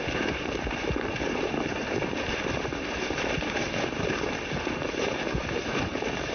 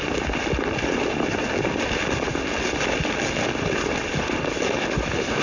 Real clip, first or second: second